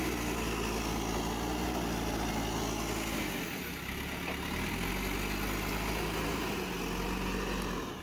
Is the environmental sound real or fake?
real